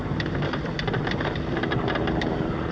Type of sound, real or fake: fake